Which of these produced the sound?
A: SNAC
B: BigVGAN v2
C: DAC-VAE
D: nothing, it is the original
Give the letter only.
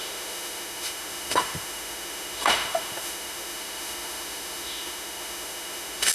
C